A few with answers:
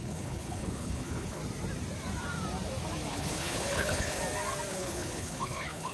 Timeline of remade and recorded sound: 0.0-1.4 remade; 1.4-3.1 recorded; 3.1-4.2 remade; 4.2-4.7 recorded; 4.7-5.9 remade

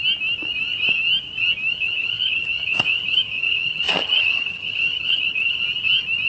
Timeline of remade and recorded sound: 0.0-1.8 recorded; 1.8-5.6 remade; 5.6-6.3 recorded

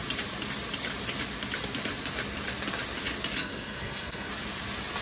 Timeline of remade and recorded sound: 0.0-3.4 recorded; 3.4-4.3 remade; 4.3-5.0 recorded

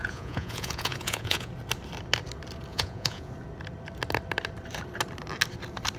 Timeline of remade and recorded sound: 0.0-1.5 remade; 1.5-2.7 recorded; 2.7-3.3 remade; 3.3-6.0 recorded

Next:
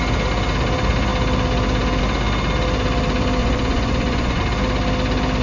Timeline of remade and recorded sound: 0.0-3.4 recorded; 3.4-4.4 remade; 4.4-5.4 recorded